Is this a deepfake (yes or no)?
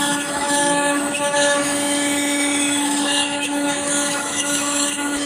yes